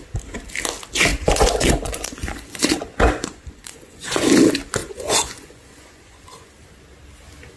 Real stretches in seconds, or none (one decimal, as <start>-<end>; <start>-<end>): 0.0-1.1; 4.3-4.8; 6.5-7.6

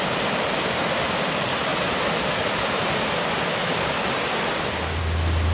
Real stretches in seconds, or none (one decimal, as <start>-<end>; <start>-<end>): 0.0-5.5

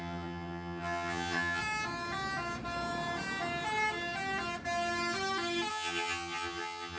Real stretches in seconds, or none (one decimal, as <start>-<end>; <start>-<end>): 1.6-5.7